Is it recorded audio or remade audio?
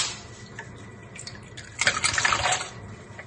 recorded